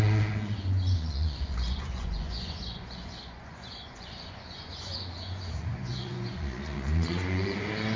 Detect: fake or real fake